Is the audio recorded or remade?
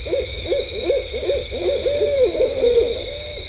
remade